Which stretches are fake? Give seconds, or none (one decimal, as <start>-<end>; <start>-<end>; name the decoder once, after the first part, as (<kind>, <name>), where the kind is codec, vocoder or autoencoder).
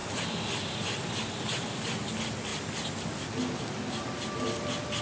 none